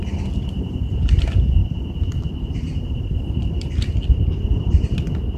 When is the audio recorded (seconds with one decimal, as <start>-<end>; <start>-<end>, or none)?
0.0-1.6; 3.7-5.4